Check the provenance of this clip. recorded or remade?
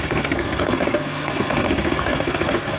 remade